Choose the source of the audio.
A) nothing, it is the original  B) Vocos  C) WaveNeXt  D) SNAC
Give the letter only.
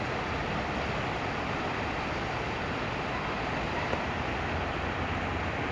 A